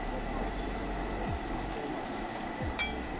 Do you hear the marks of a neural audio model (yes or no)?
no